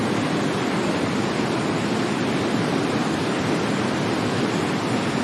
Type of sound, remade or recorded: recorded